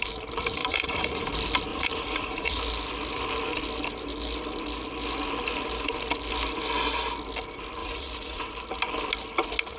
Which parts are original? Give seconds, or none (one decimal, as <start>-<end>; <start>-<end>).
0.0-0.6; 1.2-1.7; 2.6-7.8; 8.5-9.8